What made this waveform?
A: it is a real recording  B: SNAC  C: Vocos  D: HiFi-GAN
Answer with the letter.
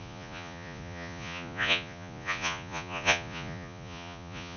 C